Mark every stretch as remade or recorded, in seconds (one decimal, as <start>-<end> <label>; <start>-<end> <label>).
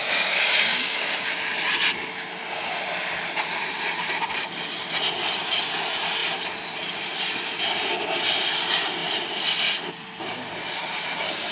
0.0-1.3 remade; 1.3-11.5 recorded